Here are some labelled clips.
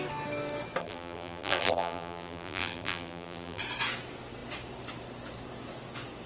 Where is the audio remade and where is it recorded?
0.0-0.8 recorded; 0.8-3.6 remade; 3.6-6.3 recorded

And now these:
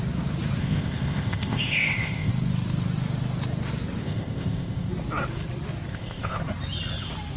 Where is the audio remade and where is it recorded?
0.0-0.6 recorded; 0.6-2.3 remade; 2.3-4.0 recorded; 4.0-4.9 remade; 4.9-5.9 recorded; 5.9-6.4 remade; 6.4-7.4 recorded

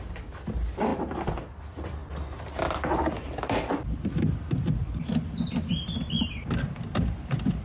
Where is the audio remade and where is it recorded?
0.0-2.0 remade; 2.0-5.5 recorded; 5.5-7.6 remade

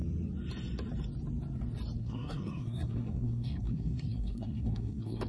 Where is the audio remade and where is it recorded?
0.0-2.0 recorded; 2.0-5.3 remade

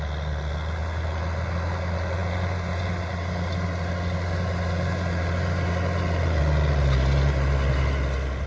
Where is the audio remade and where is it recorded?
0.0-8.5 recorded